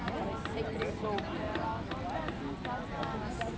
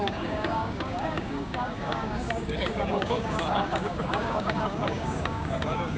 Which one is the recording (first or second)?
first